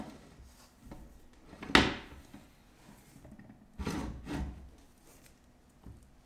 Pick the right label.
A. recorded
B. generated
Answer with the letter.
A